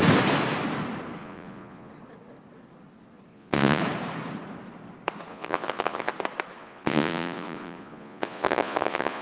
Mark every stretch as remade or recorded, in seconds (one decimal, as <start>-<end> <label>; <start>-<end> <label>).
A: 0.0-1.2 recorded; 1.2-1.9 remade; 1.9-3.3 recorded; 3.3-3.8 remade; 3.8-5.3 recorded; 5.3-6.1 remade; 6.1-6.6 recorded; 6.6-9.2 remade